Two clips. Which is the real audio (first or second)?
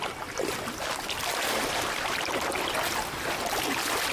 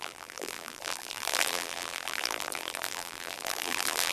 first